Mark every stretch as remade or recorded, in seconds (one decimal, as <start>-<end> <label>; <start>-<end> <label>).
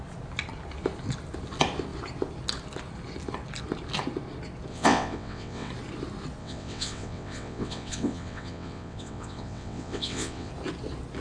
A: 0.0-4.7 recorded; 4.7-5.7 remade; 5.7-6.4 recorded; 6.4-10.5 remade; 10.5-11.2 recorded